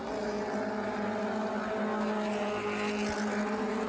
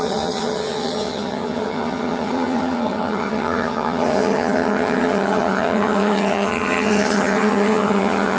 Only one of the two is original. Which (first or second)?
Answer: first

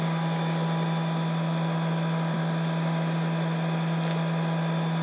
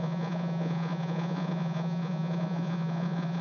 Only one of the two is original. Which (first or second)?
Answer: first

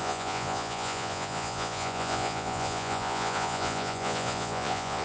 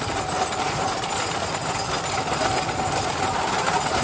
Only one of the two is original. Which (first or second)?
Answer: second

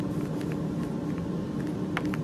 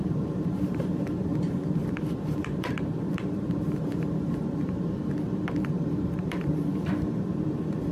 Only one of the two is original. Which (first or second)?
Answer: first